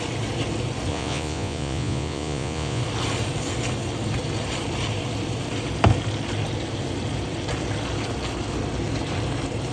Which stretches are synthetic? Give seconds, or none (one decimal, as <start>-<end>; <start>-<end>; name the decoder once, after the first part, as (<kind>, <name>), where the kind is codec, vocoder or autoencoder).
0.9-2.8 (vocoder, Vocos)